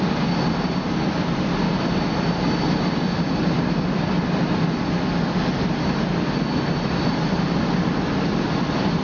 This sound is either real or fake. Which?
fake